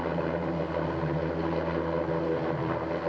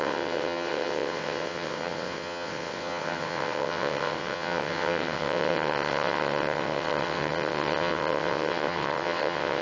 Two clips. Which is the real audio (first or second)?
first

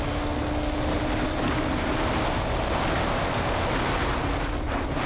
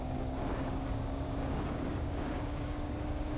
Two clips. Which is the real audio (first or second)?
first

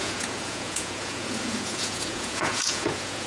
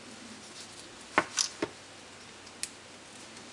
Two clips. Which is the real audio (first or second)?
second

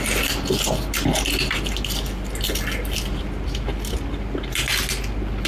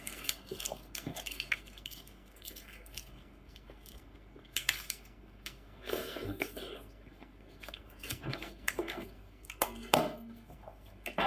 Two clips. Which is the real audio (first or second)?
first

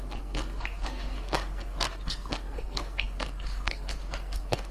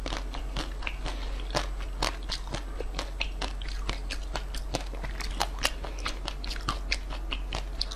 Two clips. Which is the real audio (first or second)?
second